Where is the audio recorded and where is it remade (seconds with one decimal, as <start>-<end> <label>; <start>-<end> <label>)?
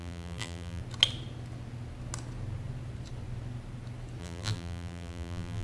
0.0-0.8 remade; 0.8-4.2 recorded; 4.2-5.6 remade